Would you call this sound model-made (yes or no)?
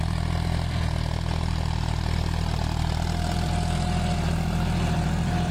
yes